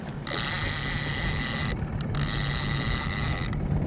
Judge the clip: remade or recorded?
recorded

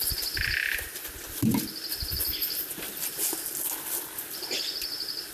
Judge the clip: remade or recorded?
recorded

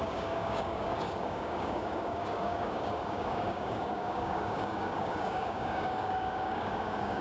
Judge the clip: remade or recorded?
remade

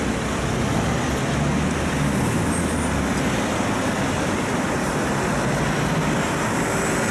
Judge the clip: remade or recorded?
recorded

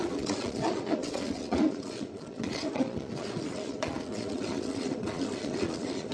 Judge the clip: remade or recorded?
remade